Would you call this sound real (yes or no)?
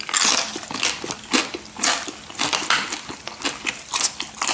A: yes